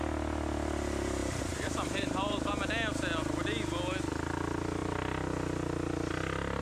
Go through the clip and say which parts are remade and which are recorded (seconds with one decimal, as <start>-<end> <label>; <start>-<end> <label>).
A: 0.0-1.2 recorded; 1.2-2.5 remade; 2.5-6.6 recorded